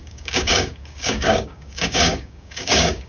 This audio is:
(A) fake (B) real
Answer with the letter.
A